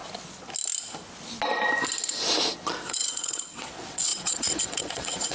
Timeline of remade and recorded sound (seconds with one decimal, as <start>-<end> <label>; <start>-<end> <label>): 0.0-2.8 recorded; 2.8-5.3 remade